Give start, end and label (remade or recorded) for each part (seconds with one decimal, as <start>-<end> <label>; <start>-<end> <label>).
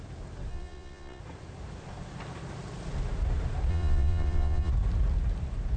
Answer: 0.0-0.5 recorded; 0.5-1.2 remade; 1.2-3.7 recorded; 3.7-4.7 remade; 4.7-5.8 recorded